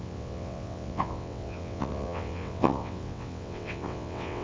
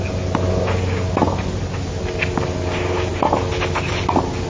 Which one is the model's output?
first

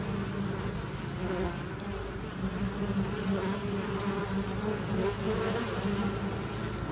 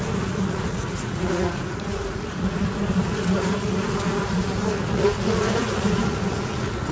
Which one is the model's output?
second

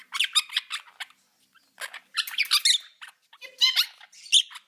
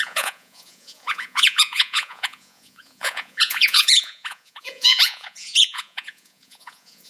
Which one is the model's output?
second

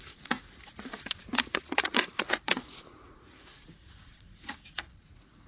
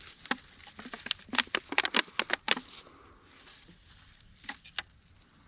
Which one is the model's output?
first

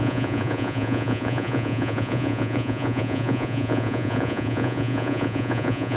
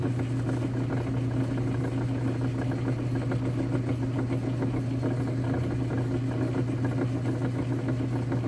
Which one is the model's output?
first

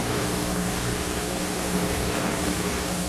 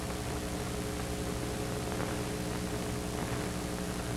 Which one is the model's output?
first